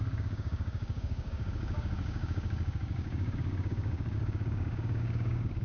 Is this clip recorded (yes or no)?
no